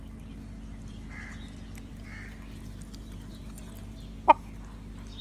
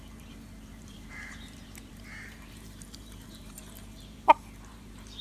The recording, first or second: first